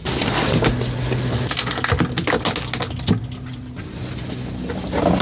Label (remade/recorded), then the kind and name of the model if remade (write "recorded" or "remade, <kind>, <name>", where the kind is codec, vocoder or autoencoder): recorded